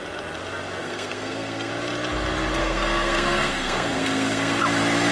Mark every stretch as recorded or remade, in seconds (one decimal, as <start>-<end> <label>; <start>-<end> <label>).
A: 0.0-0.8 recorded; 0.8-1.7 remade; 1.7-2.6 recorded; 2.6-4.6 remade; 4.6-5.1 recorded